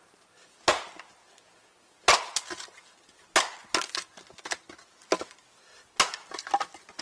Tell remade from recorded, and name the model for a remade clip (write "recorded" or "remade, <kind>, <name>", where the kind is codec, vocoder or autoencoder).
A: recorded